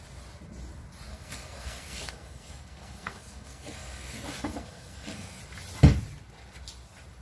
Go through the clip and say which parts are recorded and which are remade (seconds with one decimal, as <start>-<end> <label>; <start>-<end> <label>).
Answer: 0.0-1.1 recorded; 1.1-5.4 remade; 5.4-7.2 recorded